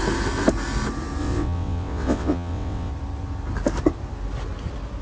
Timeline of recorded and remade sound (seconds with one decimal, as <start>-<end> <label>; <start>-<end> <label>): 0.0-1.2 recorded; 1.2-2.9 remade; 2.9-5.0 recorded